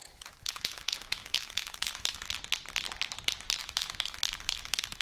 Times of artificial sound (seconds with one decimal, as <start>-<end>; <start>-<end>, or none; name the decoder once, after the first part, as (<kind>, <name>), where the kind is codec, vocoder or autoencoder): 0.0-2.3 (autoencoder, DAC-VAE); 3.6-5.0